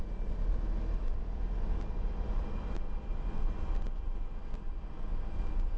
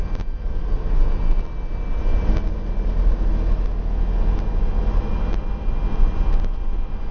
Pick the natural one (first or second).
second